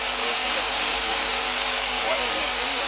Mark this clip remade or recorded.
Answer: remade